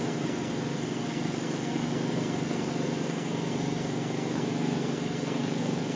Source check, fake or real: fake